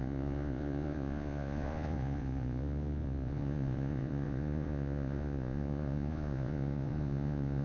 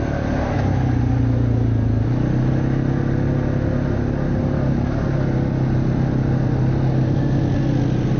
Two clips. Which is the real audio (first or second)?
second